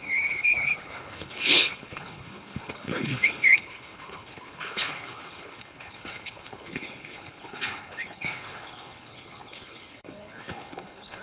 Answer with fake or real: fake